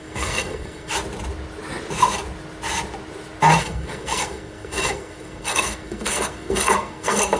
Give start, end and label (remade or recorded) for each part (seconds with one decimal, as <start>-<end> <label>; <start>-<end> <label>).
0.0-0.9 remade; 0.9-3.6 recorded; 3.6-7.4 remade